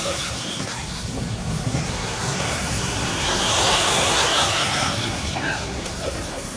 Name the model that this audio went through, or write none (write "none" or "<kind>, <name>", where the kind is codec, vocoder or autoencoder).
codec, SNAC